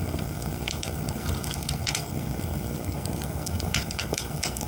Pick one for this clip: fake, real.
fake